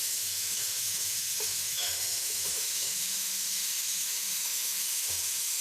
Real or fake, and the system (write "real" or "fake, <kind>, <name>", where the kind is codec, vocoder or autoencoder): fake, autoencoder, DAC-VAE